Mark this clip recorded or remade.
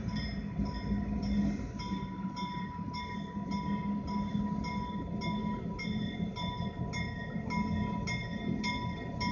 recorded